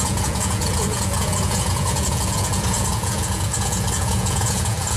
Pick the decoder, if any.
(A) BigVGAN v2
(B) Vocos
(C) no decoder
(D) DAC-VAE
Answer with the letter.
B